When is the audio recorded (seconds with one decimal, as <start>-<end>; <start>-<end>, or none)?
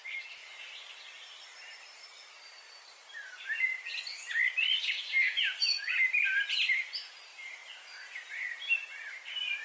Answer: 0.4-1.2; 3.9-6.7; 7.6-8.4